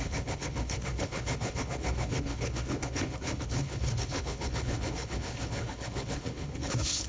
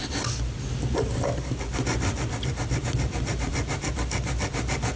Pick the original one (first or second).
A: second